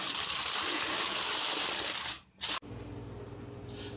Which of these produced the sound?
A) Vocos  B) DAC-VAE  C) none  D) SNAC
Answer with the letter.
C